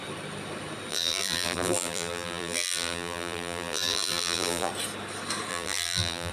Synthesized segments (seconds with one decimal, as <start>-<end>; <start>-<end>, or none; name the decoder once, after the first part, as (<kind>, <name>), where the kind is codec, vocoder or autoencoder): 0.9-4.7 (vocoder, BigVGAN v2); 5.5-6.3